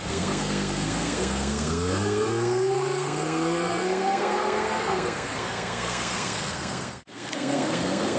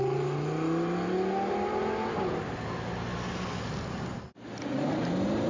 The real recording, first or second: second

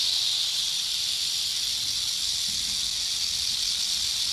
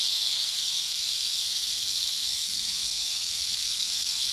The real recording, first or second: first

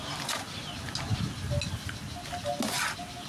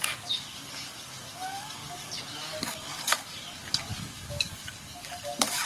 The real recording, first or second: first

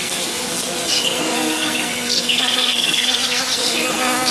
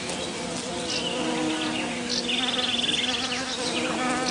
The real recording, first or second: second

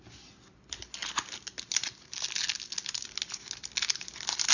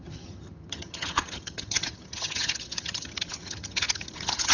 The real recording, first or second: first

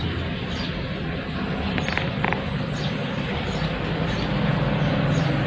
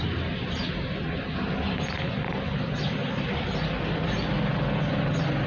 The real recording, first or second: second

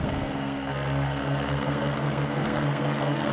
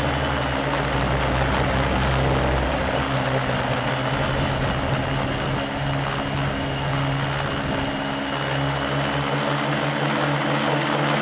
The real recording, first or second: second